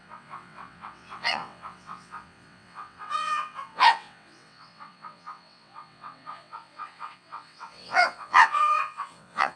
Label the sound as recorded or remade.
remade